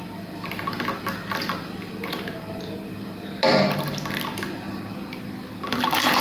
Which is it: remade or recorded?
recorded